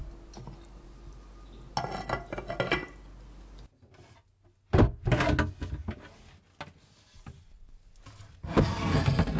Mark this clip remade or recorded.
recorded